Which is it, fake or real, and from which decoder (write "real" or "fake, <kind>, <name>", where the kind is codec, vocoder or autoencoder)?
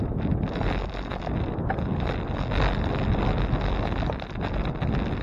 real